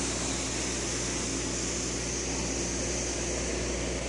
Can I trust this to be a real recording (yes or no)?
yes